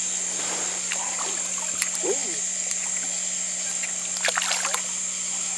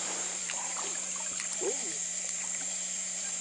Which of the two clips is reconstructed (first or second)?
second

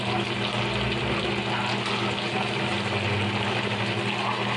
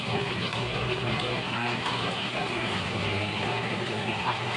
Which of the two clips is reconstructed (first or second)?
second